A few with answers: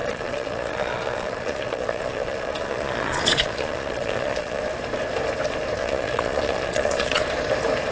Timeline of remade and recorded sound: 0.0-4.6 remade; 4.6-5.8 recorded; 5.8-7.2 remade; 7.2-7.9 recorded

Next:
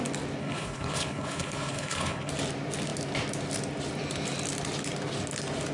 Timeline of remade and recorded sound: 0.0-0.4 recorded; 0.4-2.3 remade; 2.3-5.7 recorded